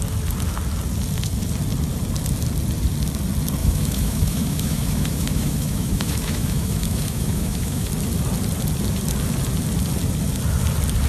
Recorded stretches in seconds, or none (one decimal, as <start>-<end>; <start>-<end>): 0.0-3.6; 7.9-11.1